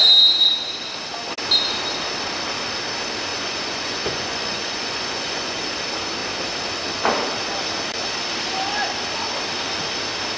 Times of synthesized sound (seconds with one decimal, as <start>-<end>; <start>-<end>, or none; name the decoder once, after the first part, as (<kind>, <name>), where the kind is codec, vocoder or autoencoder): 3.3-5.6 (vocoder, Vocos)